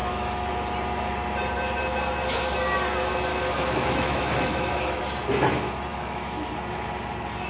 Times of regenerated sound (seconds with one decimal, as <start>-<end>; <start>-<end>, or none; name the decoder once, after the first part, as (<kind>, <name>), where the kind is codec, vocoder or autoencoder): 0.0-0.5 (autoencoder, DAC-VAE); 3.3-5.0; 5.9-6.5